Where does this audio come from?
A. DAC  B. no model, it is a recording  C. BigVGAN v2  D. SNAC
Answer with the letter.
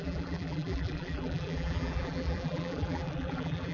C